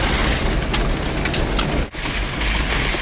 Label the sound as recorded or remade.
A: recorded